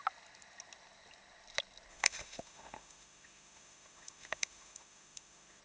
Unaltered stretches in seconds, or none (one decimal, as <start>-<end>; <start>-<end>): 0.0-1.9

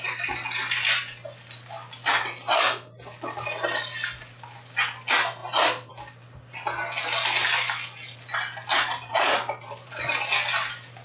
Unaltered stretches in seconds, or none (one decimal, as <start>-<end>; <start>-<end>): 0.0-5.4; 5.9-9.1; 10.1-11.0

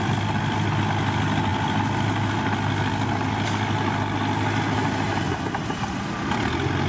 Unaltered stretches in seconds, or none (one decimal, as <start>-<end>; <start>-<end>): 0.0-6.9

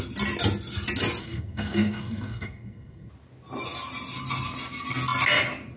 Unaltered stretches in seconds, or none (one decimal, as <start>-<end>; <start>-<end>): 0.0-1.2; 3.1-5.8

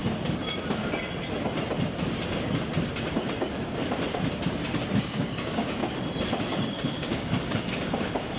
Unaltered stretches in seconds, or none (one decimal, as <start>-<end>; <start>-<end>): 0.0-4.9; 5.8-6.4